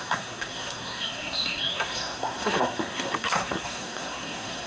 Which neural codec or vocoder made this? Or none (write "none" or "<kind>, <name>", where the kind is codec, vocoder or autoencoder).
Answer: codec, SNAC